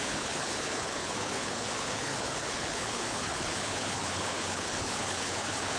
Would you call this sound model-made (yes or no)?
yes